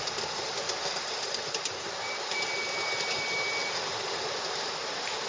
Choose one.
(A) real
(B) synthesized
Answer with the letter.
A